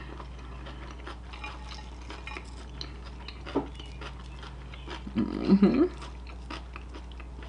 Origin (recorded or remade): recorded